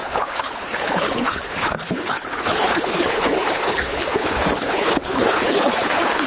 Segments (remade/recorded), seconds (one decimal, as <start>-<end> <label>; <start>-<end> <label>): 0.0-6.3 remade